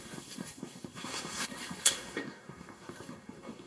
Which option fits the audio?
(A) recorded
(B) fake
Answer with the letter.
B